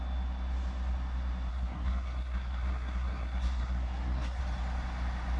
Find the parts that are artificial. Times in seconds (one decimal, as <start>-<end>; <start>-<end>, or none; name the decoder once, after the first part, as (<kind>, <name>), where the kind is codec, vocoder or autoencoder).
1.5-4.4 (codec, SNAC)